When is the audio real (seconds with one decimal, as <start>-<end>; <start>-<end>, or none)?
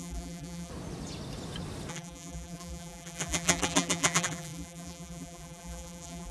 0.7-1.9